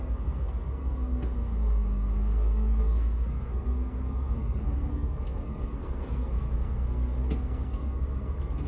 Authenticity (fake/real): fake